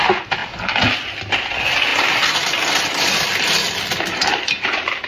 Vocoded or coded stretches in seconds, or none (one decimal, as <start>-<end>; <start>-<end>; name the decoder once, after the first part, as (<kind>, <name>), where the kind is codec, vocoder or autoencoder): 0.0-0.4 (vocoder, BigVGAN v2); 1.2-5.1